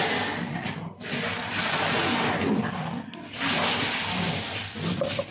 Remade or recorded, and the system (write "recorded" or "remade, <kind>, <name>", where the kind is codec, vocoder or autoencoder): recorded